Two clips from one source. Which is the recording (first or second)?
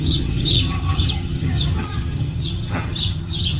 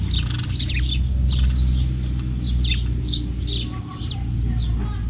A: second